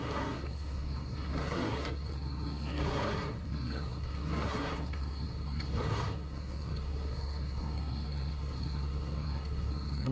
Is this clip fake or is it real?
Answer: fake